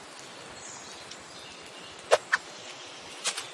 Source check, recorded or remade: recorded